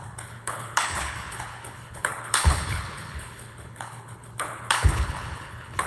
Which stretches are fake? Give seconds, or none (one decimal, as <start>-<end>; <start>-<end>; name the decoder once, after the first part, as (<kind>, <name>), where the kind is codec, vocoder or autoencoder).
0.0-5.9 (codec, HILCodec)